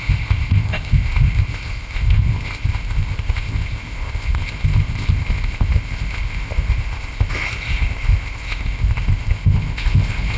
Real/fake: fake